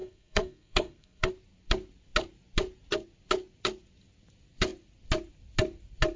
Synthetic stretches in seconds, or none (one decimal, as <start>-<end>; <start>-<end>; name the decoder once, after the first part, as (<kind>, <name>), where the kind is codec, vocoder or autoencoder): 0.0-1.3 (codec, SNAC)